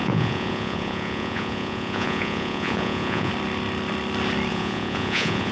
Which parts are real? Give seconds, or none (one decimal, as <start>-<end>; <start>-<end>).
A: 3.3-4.5